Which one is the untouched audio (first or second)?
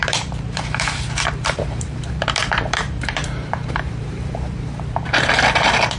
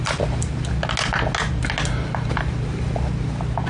second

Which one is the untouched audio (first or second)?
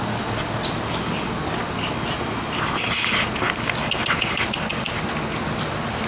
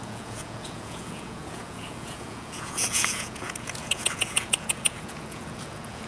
first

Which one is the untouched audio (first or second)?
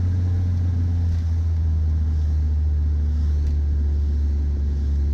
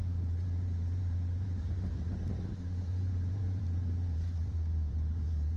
first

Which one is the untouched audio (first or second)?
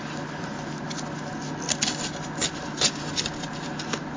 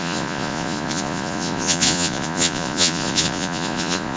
first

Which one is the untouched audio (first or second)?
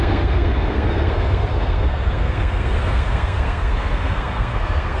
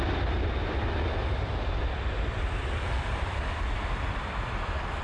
second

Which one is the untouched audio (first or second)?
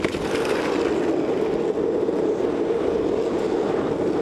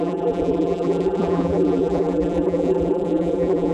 first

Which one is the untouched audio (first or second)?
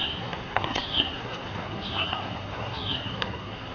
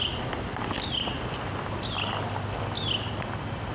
second